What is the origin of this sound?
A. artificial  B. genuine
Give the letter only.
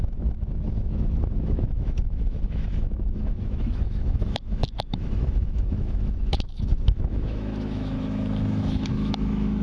A